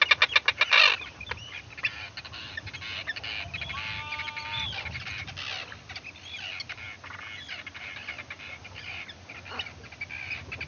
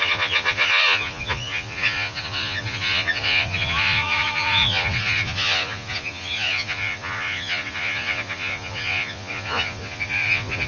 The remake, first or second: second